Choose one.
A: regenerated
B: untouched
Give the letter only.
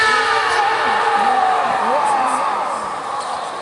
B